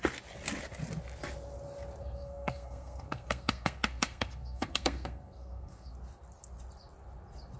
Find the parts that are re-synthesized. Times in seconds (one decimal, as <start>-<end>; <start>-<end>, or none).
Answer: 2.0-5.9